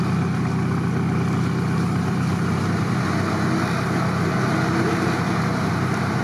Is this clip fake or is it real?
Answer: real